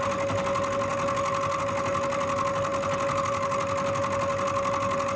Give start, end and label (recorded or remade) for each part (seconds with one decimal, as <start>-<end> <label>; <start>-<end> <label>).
0.0-5.2 recorded

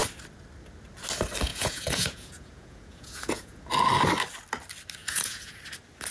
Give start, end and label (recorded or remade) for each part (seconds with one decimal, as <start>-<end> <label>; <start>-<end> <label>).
0.0-1.5 recorded; 1.5-3.6 remade; 3.6-5.0 recorded; 5.0-5.6 remade; 5.6-6.1 recorded

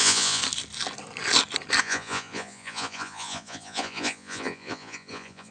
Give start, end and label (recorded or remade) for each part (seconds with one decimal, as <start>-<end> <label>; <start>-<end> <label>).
0.0-0.4 remade; 0.4-1.8 recorded; 1.8-5.5 remade

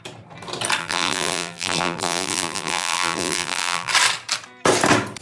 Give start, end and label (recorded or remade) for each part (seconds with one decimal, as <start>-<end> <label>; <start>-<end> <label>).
0.0-0.8 recorded; 0.8-3.9 remade; 3.9-5.2 recorded